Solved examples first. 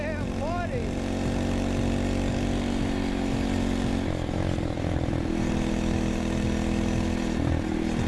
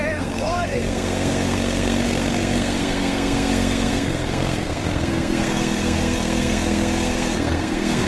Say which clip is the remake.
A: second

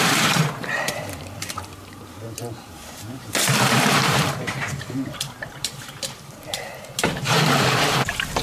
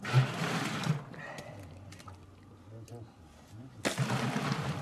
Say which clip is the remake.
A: first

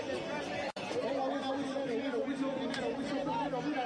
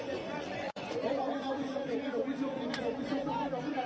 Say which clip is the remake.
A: second